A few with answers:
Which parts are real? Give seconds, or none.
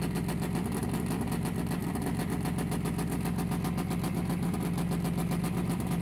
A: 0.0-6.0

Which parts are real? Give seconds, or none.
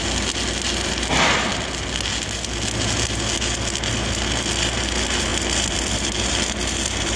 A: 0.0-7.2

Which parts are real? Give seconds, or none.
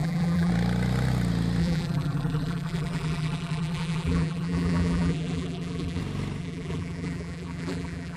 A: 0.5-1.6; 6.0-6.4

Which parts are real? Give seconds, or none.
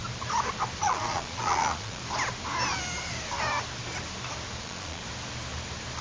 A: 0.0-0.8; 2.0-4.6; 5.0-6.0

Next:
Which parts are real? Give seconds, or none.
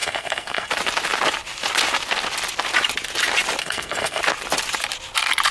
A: 0.7-3.6; 4.2-5.5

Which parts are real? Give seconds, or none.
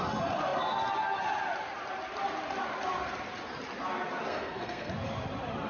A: 0.0-4.3; 4.9-5.7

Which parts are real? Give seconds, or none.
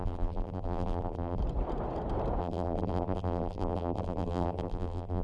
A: 1.4-2.4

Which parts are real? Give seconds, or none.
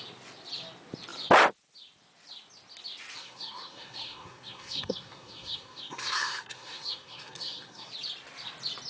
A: 0.0-3.2; 7.9-8.9